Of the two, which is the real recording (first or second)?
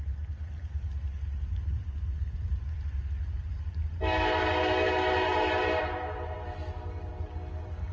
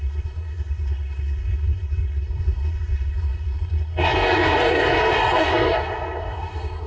first